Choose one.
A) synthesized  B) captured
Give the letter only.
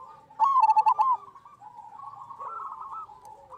B